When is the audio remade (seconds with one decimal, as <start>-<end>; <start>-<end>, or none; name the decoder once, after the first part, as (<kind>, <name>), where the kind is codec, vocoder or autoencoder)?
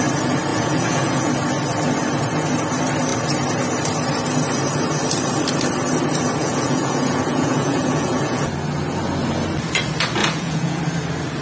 0.5-1.3 (vocoder, Vocos); 6.4-8.5; 10.2-10.8